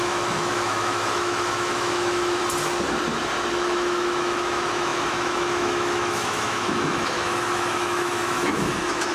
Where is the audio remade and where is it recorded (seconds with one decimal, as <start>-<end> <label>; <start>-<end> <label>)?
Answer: 0.0-2.4 remade; 2.4-3.5 recorded; 3.5-9.1 remade